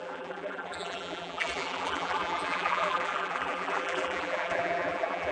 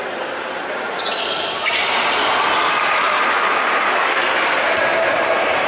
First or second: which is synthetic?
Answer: first